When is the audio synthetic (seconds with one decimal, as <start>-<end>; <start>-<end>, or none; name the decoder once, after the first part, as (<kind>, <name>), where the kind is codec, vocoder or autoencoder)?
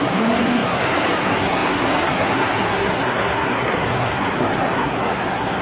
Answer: 0.0-5.6 (codec, SNAC)